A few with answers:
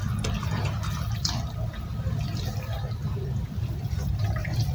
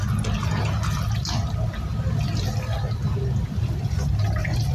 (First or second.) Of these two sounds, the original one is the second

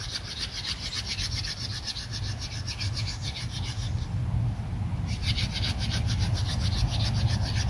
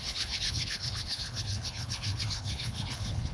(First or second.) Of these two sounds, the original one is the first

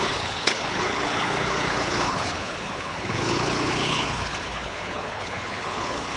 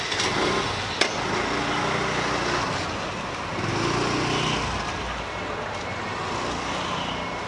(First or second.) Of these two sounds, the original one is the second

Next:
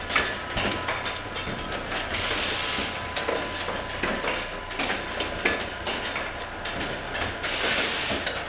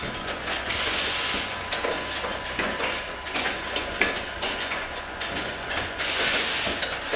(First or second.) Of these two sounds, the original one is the first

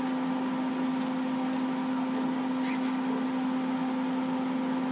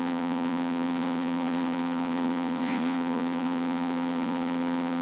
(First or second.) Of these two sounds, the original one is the first